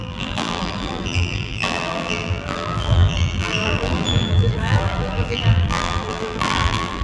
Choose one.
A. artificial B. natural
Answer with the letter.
A